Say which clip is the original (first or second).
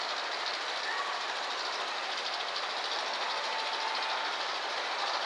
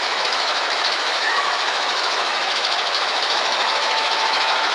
first